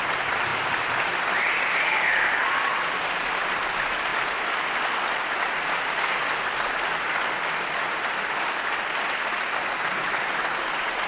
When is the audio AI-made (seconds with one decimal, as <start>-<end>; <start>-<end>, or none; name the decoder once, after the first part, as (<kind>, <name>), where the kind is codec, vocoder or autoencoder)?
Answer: 0.5-1.5 (vocoder, BigVGAN v2)